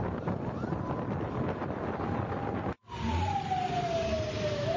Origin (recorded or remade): recorded